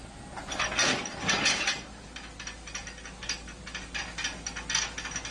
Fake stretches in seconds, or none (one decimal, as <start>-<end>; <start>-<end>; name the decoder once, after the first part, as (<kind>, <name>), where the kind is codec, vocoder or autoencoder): none